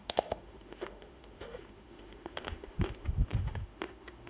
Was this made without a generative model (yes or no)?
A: no